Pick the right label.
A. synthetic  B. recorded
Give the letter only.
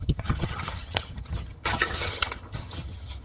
A